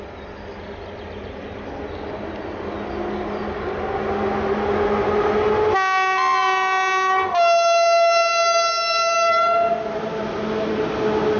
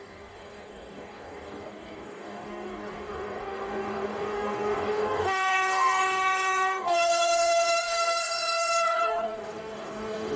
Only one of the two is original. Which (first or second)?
first